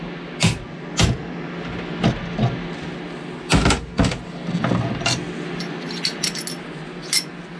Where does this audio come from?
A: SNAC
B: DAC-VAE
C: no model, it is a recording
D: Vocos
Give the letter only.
C